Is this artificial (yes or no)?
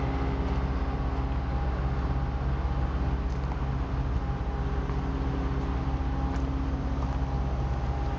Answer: no